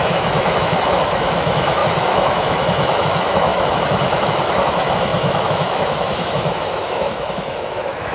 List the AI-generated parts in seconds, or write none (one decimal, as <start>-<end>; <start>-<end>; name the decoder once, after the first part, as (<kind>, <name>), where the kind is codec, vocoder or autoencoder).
0.0-8.1 (autoencoder, DAC-VAE)